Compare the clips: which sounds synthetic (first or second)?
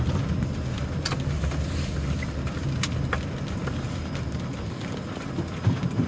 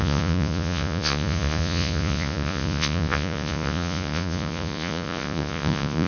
second